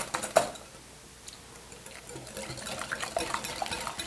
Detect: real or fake real